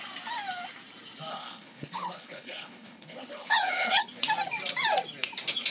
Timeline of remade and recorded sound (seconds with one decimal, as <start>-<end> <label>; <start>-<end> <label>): 0.0-1.3 recorded; 1.3-4.2 remade; 4.2-5.7 recorded